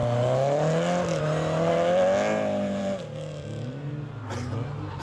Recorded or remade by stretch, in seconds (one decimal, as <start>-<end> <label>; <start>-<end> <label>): 0.0-5.0 recorded

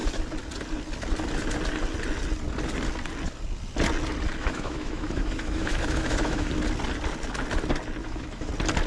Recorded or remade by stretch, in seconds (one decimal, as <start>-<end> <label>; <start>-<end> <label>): 0.0-4.4 recorded; 4.4-6.5 remade; 6.5-8.0 recorded; 8.0-8.5 remade; 8.5-8.9 recorded

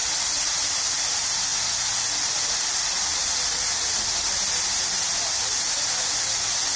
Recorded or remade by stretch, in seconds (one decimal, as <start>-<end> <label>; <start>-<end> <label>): 0.0-6.8 recorded

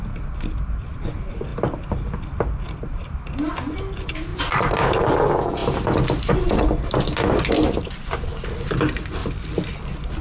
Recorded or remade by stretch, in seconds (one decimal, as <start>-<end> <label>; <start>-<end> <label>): 0.0-4.3 recorded; 4.3-5.0 remade; 5.0-5.6 recorded; 5.6-6.3 remade; 6.3-9.2 recorded; 9.2-10.2 remade